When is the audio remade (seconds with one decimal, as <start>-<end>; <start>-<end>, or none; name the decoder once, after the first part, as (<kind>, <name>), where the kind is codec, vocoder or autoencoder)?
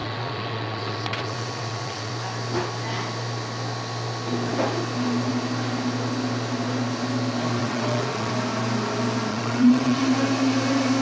0.0-2.1 (vocoder, WaveNeXt); 7.6-8.3; 9.3-10.0